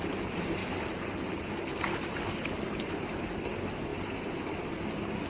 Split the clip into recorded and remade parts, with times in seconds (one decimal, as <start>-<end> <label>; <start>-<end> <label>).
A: 0.0-0.6 recorded; 0.6-1.3 remade; 1.3-5.3 recorded

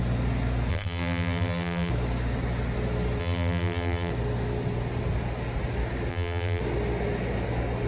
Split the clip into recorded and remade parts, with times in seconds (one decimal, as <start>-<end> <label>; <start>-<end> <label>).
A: 0.0-0.7 recorded; 0.7-1.9 remade; 1.9-3.2 recorded; 3.2-4.1 remade; 4.1-6.1 recorded; 6.1-6.6 remade; 6.6-7.9 recorded

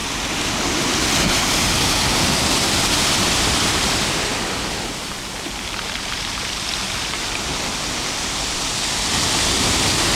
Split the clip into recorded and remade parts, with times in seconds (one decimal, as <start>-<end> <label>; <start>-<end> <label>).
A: 0.0-1.9 recorded; 1.9-10.1 remade